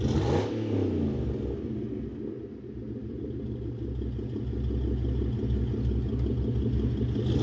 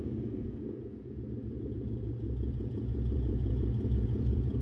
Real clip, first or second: first